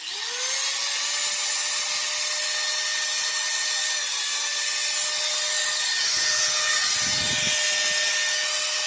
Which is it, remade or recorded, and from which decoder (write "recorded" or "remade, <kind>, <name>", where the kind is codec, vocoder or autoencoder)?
recorded